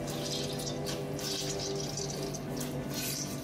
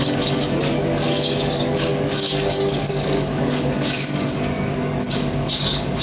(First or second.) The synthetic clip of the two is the second